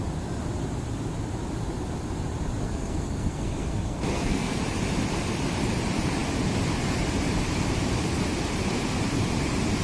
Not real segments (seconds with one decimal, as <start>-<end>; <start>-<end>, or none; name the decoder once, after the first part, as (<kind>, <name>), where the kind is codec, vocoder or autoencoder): 2.6-4.6 (codec, SNAC)